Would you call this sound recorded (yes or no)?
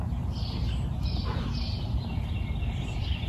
yes